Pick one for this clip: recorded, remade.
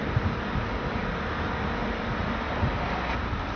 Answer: recorded